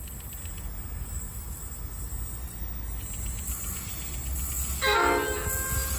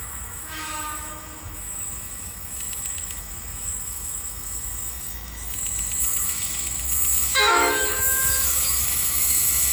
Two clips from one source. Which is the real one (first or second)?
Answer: first